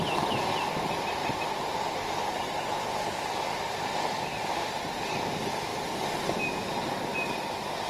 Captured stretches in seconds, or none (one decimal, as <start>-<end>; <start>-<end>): 0.0-1.2; 4.6-5.7; 6.4-7.9